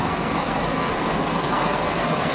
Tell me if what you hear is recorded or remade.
remade